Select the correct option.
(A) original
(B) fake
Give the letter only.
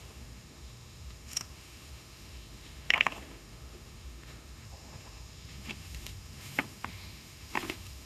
B